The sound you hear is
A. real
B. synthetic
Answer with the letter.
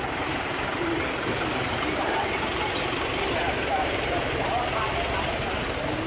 B